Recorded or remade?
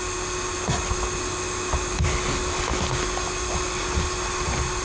recorded